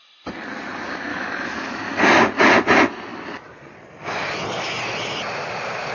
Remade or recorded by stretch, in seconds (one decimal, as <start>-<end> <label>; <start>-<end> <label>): 0.0-1.1 recorded; 1.1-2.0 remade; 2.0-5.9 recorded